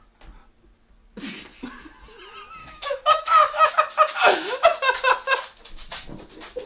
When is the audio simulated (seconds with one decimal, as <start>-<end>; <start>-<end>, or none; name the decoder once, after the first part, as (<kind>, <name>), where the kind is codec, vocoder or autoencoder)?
2.6-3.7 (autoencoder, DAC-VAE)

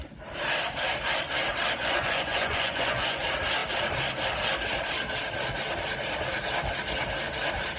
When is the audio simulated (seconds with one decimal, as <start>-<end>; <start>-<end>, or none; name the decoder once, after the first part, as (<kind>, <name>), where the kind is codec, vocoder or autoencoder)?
1.8-3.2 (vocoder, Vocos)

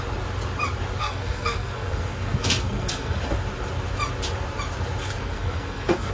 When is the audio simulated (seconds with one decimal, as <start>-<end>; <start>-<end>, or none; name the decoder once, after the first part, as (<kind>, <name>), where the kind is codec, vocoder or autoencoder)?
1.0-3.2 (codec, SNAC); 5.0-6.1

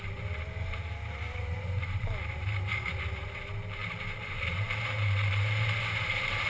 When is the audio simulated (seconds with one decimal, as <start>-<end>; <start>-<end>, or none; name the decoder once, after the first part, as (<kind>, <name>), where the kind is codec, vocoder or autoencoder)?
0.0-6.5 (vocoder, BigVGAN v2)

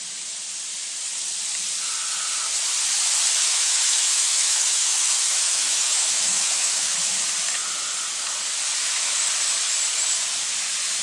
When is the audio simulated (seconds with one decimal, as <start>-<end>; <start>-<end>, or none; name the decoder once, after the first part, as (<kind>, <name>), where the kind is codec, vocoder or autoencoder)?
3.4-6.9 (autoencoder, DAC-VAE)

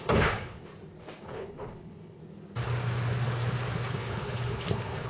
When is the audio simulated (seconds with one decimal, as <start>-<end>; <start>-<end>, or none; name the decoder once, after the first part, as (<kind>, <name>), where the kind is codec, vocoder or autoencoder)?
0.0-0.7 (codec, HILCodec); 1.2-2.2; 3.9-5.1

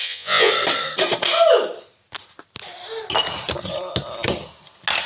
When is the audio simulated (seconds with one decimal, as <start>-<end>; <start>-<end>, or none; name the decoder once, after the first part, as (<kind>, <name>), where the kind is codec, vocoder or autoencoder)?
0.0-0.5 (vocoder, Vocos)